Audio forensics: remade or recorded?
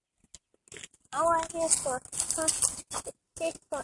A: recorded